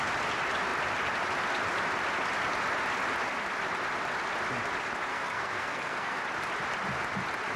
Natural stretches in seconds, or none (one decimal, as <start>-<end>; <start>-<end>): 0.0-5.1; 6.2-7.6